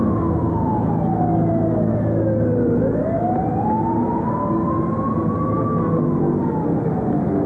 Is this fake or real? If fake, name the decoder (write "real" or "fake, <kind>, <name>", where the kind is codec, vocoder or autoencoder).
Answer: real